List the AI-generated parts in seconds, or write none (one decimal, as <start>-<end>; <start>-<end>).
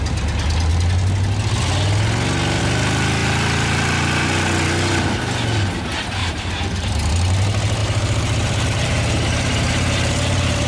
6.2-7.1; 7.8-10.7